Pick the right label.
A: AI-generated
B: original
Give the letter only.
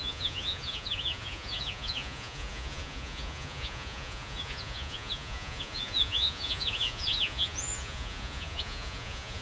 A